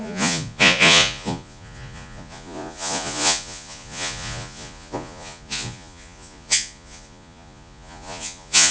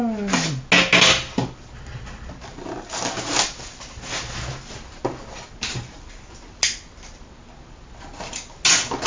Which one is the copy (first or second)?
first